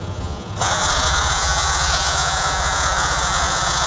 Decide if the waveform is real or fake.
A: fake